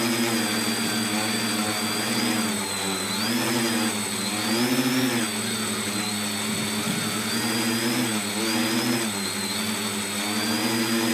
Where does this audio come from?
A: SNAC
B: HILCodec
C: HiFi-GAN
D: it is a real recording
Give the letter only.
D